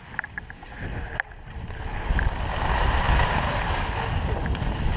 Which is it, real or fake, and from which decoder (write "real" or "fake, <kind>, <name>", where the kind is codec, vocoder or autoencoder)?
real